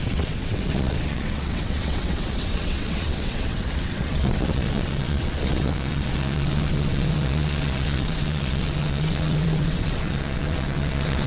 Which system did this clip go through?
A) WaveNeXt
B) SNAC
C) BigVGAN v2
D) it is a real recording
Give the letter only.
A